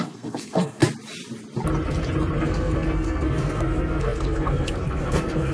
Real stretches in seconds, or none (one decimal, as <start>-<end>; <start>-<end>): 0.8-2.4

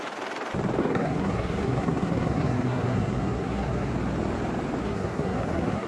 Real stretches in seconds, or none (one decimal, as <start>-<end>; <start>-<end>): 0.0-0.8; 3.9-4.8